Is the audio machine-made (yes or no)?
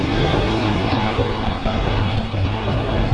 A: yes